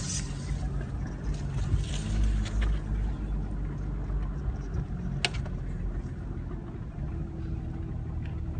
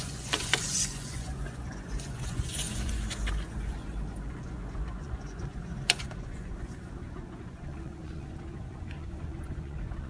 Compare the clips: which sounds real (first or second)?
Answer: first